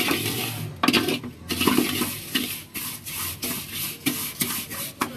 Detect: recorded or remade recorded